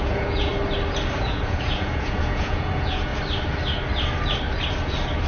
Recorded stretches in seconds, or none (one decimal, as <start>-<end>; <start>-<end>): 0.5-1.2; 3.1-5.3